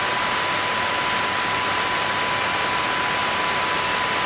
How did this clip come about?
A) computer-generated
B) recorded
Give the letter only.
B